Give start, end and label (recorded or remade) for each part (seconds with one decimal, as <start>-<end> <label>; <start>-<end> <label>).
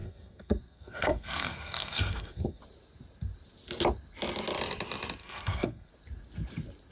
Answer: 0.0-2.6 remade; 2.6-5.2 recorded; 5.2-5.9 remade; 5.9-6.9 recorded